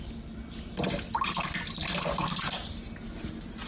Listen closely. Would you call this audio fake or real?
real